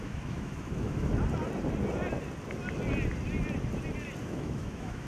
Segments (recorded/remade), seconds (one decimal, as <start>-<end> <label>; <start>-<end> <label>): 0.0-1.1 remade; 1.1-4.2 recorded; 4.2-5.1 remade